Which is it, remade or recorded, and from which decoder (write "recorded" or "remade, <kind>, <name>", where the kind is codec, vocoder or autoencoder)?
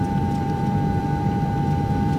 remade, vocoder, BigVGAN v2